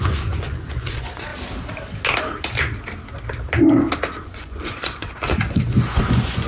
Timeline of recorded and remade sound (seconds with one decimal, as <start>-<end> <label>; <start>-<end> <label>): 0.0-1.3 remade; 1.3-4.2 recorded; 4.2-6.5 remade